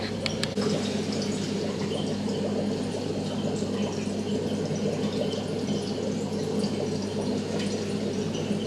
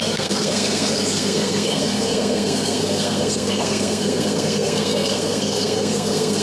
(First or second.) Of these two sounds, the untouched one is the first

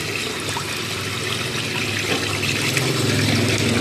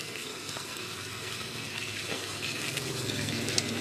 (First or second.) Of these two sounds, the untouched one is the first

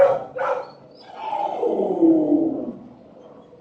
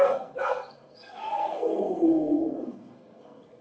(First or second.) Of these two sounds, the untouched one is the first